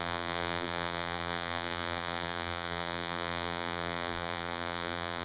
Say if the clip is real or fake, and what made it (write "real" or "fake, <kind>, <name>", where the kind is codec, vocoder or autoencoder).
fake, vocoder, BigVGAN v2